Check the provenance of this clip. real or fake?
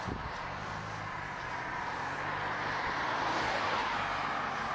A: real